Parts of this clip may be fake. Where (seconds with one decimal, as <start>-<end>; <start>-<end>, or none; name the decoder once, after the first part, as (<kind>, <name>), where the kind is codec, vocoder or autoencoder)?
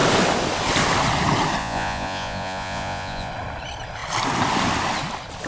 1.6-3.3 (vocoder, Vocos)